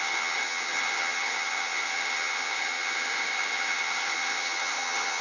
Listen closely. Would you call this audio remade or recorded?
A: remade